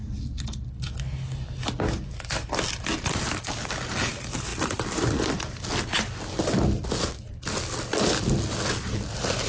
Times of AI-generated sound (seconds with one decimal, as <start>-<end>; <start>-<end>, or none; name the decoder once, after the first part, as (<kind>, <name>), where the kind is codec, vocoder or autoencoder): none